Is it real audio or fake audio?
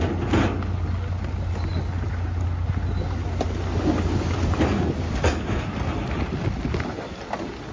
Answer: real